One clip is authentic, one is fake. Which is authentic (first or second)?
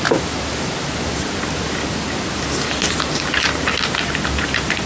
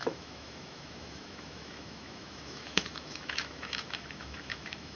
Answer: first